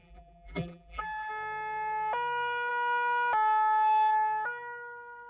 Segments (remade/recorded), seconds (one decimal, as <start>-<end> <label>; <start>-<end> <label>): 0.0-1.3 remade; 1.3-5.3 recorded